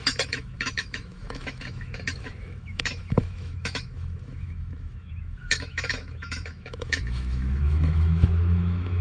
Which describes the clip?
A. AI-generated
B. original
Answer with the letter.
A